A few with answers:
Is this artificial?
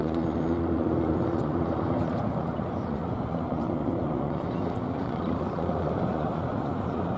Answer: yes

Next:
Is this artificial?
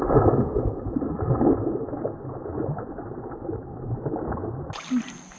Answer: no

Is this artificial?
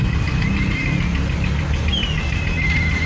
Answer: no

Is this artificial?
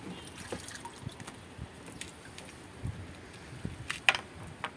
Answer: no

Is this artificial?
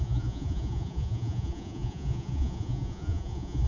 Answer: yes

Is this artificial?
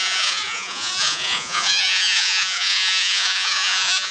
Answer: yes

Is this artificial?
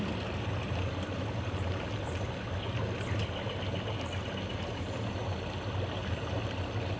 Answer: no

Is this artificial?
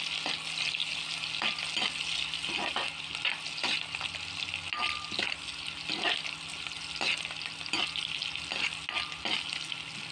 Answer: no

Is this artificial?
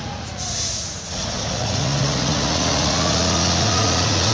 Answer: yes